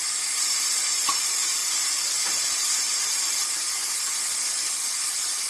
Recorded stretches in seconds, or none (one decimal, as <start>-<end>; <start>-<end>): 0.0-5.5